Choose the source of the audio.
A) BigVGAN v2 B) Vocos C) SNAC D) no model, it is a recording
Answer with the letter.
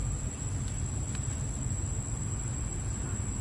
D